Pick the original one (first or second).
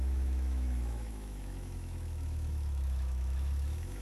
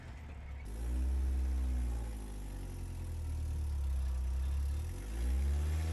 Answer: second